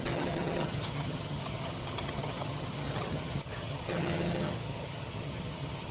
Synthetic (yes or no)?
yes